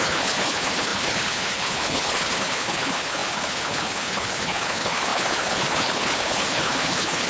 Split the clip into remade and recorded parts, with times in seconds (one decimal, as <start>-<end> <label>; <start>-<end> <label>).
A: 0.0-7.3 remade